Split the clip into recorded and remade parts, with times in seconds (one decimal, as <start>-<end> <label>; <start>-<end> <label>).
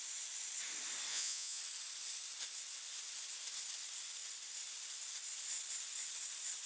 0.0-1.1 recorded; 1.1-1.6 remade; 1.6-6.7 recorded